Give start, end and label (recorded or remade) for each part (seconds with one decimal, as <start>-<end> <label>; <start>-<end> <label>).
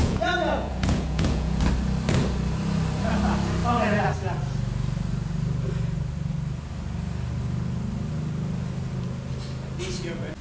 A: 0.0-1.6 remade; 1.6-10.4 recorded